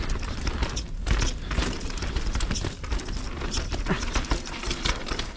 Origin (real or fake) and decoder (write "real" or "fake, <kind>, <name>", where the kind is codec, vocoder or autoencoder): real